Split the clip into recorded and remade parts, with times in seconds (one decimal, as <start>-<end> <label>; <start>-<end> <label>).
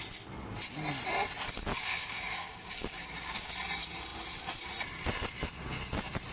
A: 0.0-1.7 recorded; 1.7-3.5 remade; 3.5-6.3 recorded